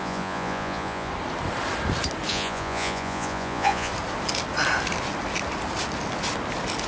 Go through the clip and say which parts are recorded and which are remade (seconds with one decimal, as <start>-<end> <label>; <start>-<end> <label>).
0.0-1.1 remade; 1.1-2.3 recorded; 2.3-3.9 remade; 3.9-6.9 recorded